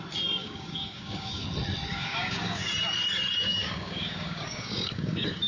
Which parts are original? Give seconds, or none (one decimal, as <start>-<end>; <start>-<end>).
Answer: 0.0-0.4; 1.4-1.9; 2.7-3.5

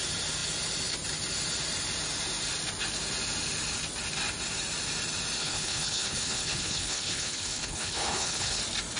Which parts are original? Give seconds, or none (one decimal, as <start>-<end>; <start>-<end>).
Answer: 0.0-5.4; 8.6-9.0

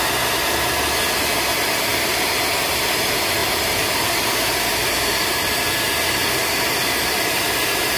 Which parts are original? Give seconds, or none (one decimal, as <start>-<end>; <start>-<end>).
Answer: 0.0-1.9; 2.6-3.4; 5.4-6.4

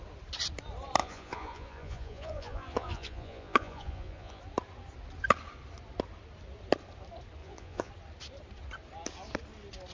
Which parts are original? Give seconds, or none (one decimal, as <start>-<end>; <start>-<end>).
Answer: 0.0-1.0; 4.4-7.4; 7.9-9.9

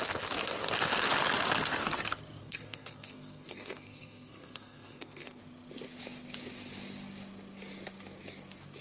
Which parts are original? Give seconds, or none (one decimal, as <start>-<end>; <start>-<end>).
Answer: 0.0-2.4; 5.4-8.8

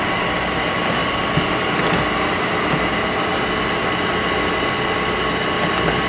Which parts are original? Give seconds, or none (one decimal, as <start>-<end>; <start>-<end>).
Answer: 0.0-6.1